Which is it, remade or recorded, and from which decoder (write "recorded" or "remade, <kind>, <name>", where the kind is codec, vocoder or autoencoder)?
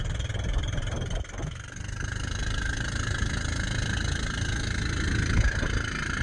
recorded